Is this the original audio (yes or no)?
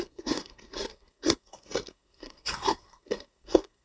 no